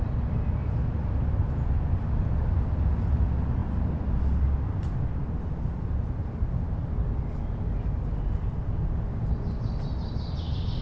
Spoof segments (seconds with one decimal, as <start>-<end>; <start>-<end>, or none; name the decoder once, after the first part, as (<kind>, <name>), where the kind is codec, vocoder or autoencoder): none